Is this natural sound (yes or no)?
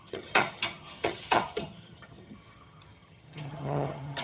no